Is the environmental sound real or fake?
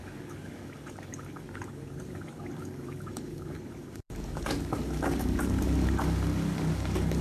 fake